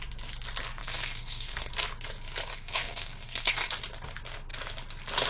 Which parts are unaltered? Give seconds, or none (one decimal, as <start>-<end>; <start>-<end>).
0.0-0.8; 1.7-2.5; 3.7-5.3